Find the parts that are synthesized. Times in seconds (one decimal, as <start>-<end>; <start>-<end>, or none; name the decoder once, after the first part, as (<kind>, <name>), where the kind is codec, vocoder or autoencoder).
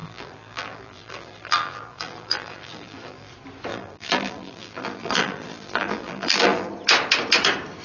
0.0-3.3 (vocoder, BigVGAN v2); 3.7-6.7